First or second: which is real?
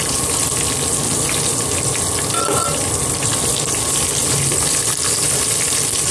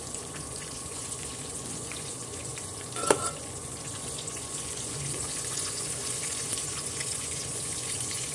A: first